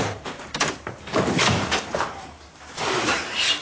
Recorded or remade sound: remade